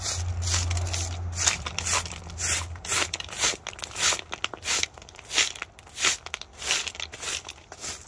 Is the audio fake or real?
real